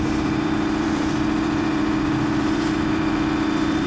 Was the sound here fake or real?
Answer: fake